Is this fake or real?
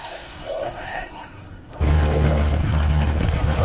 fake